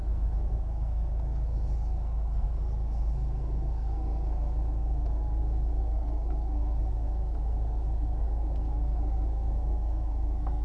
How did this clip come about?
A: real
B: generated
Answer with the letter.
B